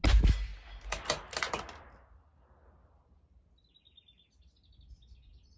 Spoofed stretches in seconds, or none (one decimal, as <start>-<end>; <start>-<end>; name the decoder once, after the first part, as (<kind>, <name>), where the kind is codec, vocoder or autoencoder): none